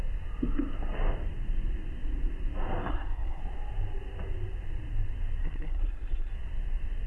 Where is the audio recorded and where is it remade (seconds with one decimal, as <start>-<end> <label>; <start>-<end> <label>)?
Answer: 0.0-2.9 recorded; 2.9-3.4 remade; 3.4-5.4 recorded; 5.4-6.3 remade; 6.3-7.1 recorded